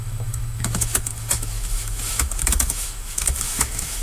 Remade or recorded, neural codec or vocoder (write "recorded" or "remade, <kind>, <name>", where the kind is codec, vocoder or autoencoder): remade, autoencoder, DAC-VAE